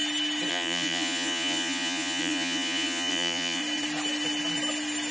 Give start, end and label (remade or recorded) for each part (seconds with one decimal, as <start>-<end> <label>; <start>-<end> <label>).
0.0-0.5 recorded; 0.5-3.6 remade; 3.6-5.1 recorded